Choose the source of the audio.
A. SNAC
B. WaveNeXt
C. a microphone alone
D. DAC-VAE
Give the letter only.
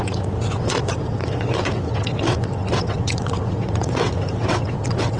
B